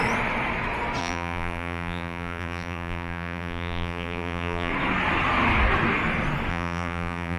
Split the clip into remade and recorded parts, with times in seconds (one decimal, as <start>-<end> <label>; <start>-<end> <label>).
0.0-1.0 recorded; 1.0-4.7 remade; 4.7-6.5 recorded; 6.5-7.4 remade